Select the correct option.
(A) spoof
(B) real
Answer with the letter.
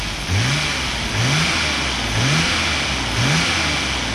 B